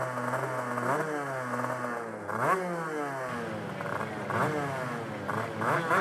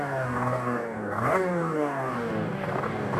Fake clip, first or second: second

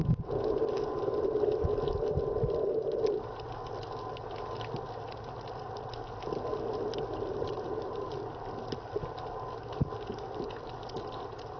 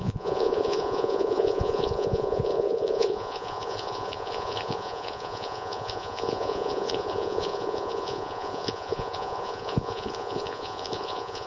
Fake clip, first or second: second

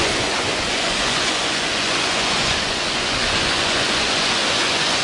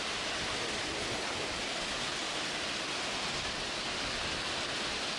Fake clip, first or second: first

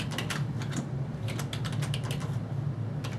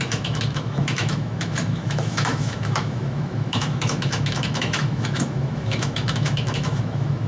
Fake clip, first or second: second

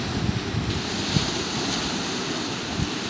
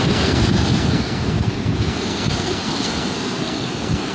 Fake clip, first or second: second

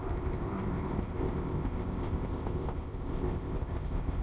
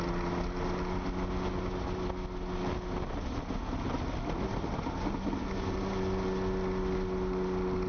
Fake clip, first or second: first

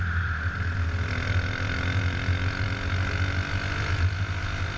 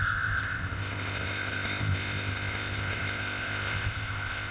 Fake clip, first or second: second